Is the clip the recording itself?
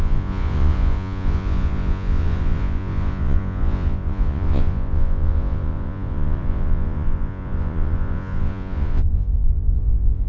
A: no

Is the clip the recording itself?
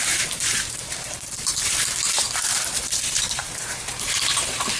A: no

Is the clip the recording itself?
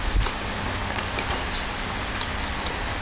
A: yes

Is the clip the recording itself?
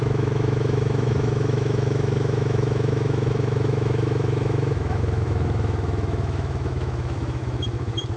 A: no